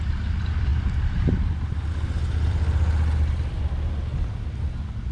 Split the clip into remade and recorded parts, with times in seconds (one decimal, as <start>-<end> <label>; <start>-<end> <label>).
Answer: 0.0-5.1 recorded